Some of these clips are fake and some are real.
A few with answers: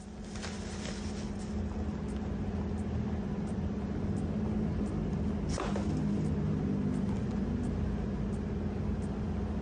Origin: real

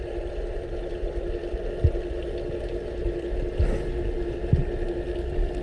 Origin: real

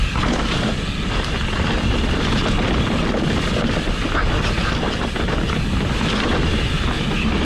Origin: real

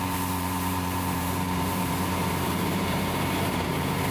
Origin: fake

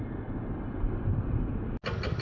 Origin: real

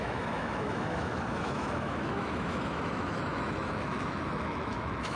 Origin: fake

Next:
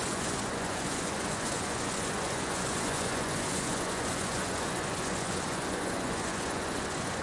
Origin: fake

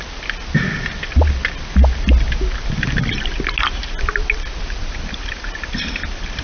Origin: real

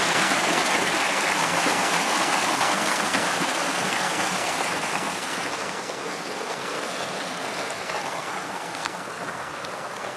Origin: fake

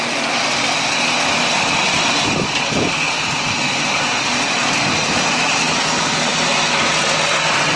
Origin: real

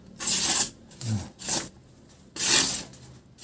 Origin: real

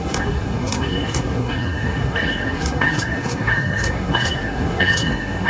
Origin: fake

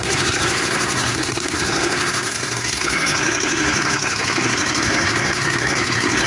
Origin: fake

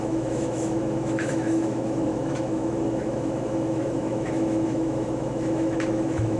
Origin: fake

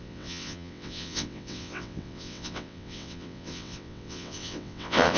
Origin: fake